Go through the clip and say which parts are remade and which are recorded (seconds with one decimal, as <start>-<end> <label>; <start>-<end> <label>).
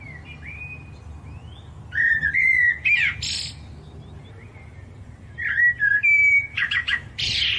0.0-6.5 recorded; 6.5-7.1 remade; 7.1-7.6 recorded